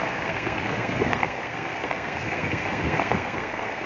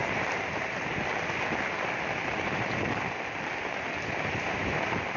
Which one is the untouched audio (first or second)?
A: second